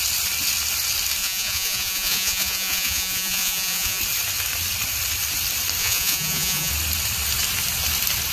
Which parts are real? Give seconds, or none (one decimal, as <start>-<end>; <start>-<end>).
0.0-1.2; 4.0-5.8; 6.7-8.3